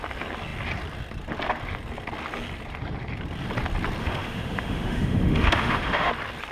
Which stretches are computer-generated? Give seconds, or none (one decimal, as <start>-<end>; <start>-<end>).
4.0-6.1